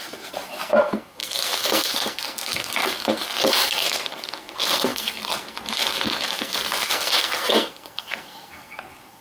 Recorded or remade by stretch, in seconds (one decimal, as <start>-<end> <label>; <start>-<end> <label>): 0.0-9.2 remade